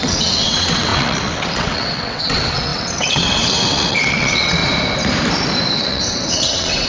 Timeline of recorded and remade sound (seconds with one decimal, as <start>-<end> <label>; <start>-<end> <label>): 0.0-4.6 remade; 4.6-5.7 recorded; 5.7-6.9 remade

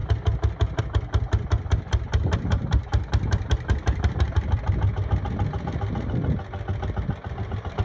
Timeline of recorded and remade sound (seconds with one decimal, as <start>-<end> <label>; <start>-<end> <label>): 0.0-7.8 recorded